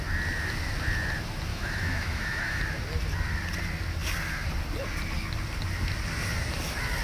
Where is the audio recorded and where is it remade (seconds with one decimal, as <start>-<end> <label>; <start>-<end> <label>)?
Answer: 0.0-1.5 recorded; 1.5-2.6 remade; 2.6-7.0 recorded